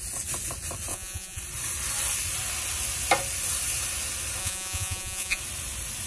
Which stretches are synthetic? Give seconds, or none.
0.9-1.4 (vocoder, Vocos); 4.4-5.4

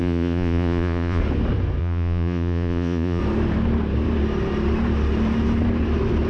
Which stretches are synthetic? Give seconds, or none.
0.0-1.2 (vocoder, Vocos); 1.8-3.2

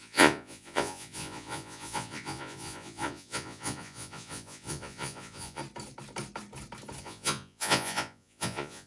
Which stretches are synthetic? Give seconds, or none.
0.0-5.6 (vocoder, Vocos); 7.0-8.9

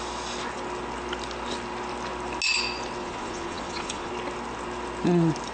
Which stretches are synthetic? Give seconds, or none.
3.0-4.1 (vocoder, Vocos)

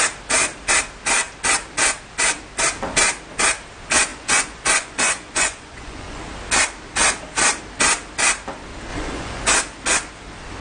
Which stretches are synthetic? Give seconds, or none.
4.1-6.2 (vocoder, Vocos); 8.9-9.5

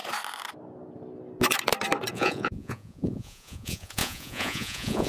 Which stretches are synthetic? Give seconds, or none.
2.1-5.1 (vocoder, Vocos)